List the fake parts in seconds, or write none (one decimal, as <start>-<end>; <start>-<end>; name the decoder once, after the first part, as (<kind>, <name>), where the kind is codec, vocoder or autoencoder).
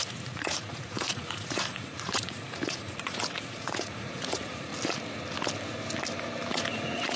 0.0-4.7 (vocoder, Vocos); 6.5-7.2